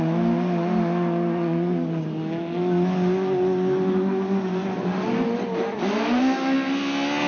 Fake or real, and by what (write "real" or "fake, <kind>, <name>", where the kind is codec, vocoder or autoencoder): real